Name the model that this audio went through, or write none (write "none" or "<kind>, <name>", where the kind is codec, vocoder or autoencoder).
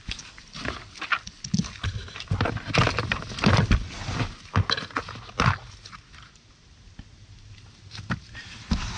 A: none